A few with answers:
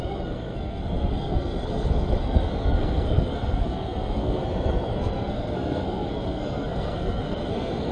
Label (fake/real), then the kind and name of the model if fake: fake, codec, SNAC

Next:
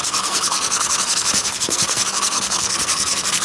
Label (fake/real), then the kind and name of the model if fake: fake, codec, SNAC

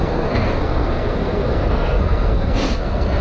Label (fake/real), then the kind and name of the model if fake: fake, codec, SNAC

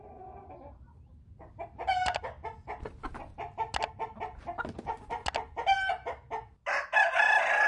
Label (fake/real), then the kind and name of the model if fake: real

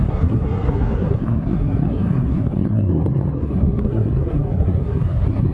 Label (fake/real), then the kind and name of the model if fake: fake, codec, SNAC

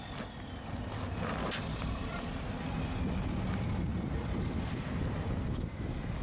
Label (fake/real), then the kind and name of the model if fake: real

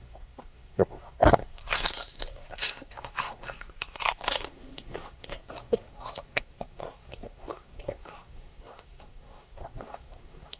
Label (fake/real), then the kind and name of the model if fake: fake, codec, SNAC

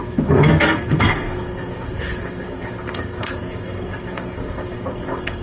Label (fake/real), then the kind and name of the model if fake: fake, codec, SNAC